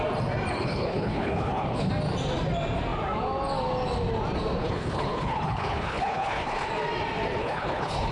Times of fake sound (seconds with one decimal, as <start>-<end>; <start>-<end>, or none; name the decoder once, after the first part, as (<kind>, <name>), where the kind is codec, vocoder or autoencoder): 0.5-1.9 (codec, HILCodec); 4.6-6.7; 7.4-8.1